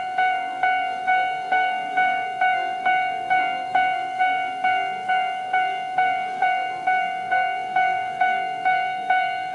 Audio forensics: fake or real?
fake